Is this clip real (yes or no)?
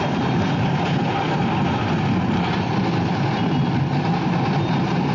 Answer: no